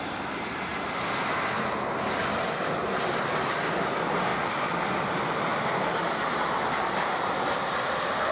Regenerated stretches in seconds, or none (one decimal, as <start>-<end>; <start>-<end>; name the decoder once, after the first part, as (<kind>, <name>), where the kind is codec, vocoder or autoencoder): 0.0-0.7 (vocoder, BigVGAN v2); 2.2-5.5; 7.4-8.3